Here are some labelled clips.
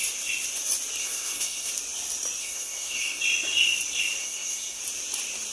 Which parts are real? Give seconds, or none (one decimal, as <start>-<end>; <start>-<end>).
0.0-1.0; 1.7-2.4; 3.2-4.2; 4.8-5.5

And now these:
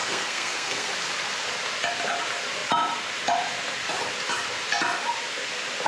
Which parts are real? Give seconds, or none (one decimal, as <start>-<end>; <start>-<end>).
0.9-5.9

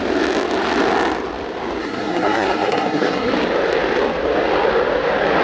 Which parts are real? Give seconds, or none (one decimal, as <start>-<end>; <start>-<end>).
0.0-1.8; 3.3-5.4

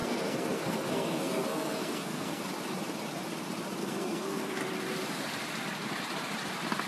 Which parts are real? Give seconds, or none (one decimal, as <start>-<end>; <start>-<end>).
2.4-3.8; 4.6-6.9